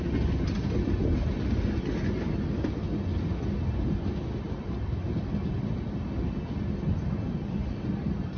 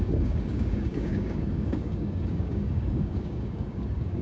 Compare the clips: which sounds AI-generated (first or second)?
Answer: second